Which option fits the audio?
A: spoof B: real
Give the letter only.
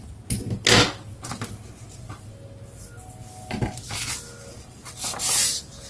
B